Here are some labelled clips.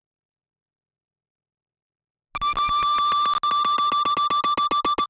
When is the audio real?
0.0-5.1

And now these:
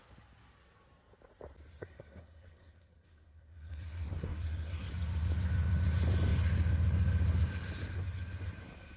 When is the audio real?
0.0-1.8; 4.9-9.0

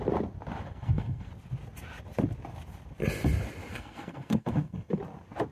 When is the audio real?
0.0-0.6; 1.3-3.7; 5.0-5.5

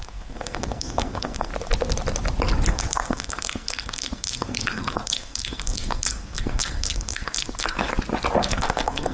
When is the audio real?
1.5-2.7; 7.9-8.4

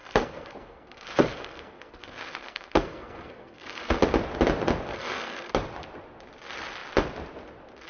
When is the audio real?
4.0-4.9; 5.5-7.9

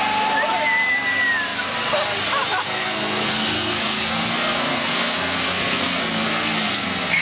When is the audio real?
0.0-2.6